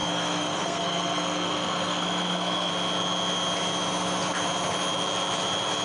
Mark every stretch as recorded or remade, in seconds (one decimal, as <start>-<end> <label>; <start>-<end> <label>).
0.0-2.7 remade; 2.7-5.8 recorded